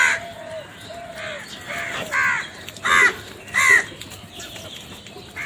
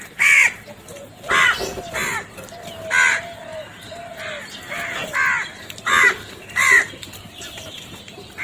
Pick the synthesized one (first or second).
second